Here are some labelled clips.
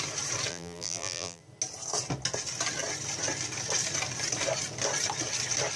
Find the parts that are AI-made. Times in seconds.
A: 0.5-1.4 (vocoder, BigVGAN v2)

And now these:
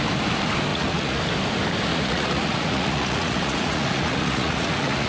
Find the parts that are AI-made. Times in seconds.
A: 0.7-1.2 (vocoder, Vocos); 1.9-5.1

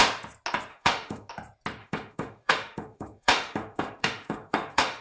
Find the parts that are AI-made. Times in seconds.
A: 0.7-1.3 (autoencoder, DAC-VAE); 1.8-5.0

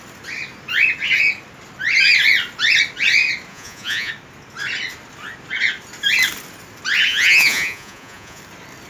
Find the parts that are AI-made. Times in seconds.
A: 3.5-4.1 (vocoder, Vocos); 7.1-8.4

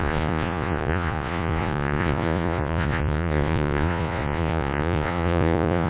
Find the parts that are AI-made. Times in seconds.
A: 0.0-5.9 (vocoder, Vocos)